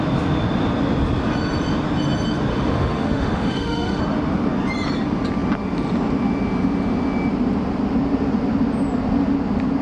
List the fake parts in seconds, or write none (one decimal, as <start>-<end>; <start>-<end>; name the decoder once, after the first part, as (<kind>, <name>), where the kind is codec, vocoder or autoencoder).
2.5-4.0 (autoencoder, DAC-VAE)